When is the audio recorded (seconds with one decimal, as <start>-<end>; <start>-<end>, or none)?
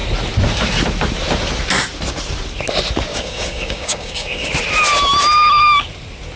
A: 0.0-3.1; 4.5-6.4